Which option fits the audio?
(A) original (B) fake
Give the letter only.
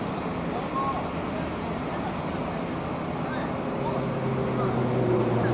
A